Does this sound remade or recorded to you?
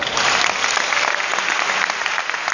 recorded